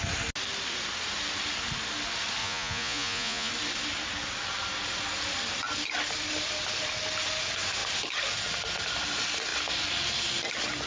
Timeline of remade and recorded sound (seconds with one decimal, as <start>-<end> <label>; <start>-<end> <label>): 0.0-2.4 recorded; 2.4-3.5 remade; 3.5-10.9 recorded